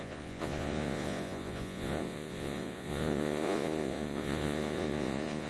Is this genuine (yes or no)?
no